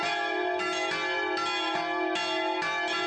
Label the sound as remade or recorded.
recorded